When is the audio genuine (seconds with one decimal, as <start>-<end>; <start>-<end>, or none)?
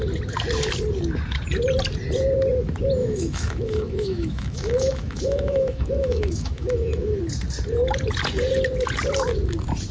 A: 0.0-3.0; 7.2-9.9